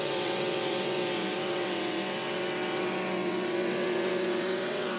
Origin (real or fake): fake